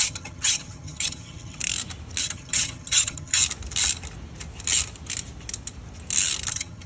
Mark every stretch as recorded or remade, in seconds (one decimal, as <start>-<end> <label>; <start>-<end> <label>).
0.0-1.6 remade; 1.6-2.2 recorded; 2.2-3.4 remade; 3.4-6.5 recorded; 6.5-6.9 remade